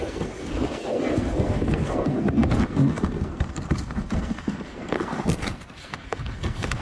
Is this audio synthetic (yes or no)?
yes